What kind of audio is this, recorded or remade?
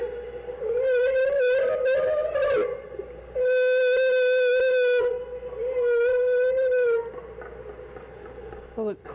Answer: recorded